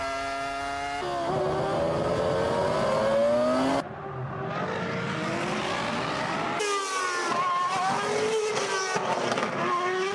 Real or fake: real